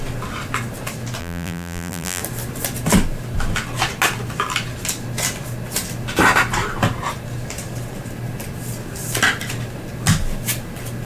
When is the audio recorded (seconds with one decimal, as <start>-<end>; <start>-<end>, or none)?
0.0-1.2; 2.2-11.1